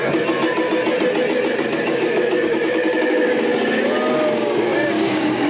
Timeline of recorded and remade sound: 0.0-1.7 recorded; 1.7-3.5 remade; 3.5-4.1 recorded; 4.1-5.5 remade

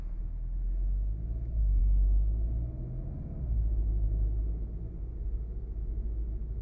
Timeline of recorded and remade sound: 0.0-6.6 recorded

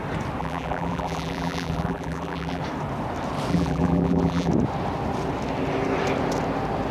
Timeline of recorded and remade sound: 0.0-0.4 recorded; 0.4-2.6 remade; 2.6-3.5 recorded; 3.5-4.5 remade; 4.5-6.9 recorded

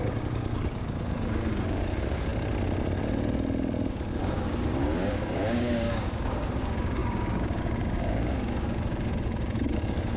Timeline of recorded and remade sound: 0.0-2.3 remade; 2.3-3.9 recorded; 3.9-10.2 remade

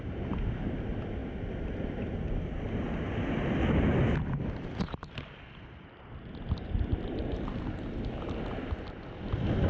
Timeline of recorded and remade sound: 0.0-9.7 recorded

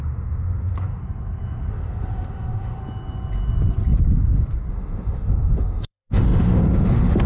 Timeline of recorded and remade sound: 0.0-1.0 remade; 1.0-1.7 recorded; 1.7-2.8 remade; 2.8-4.7 recorded; 4.7-7.3 remade